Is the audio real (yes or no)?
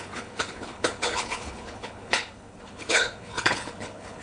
no